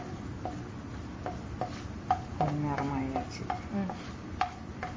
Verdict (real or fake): real